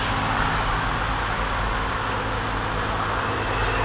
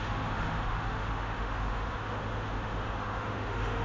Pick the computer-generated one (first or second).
second